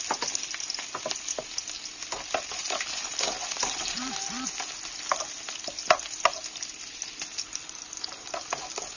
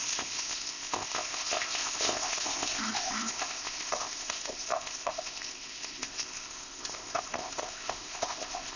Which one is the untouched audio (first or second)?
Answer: first